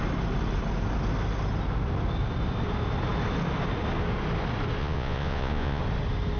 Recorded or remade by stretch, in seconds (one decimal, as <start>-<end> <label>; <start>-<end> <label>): 0.0-4.8 recorded; 4.8-5.8 remade; 5.8-6.4 recorded